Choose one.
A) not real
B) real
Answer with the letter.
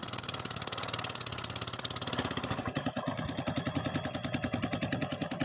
B